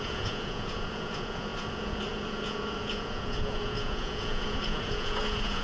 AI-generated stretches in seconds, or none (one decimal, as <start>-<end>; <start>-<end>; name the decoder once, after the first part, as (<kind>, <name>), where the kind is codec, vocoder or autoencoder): 0.0-5.6 (vocoder, Vocos)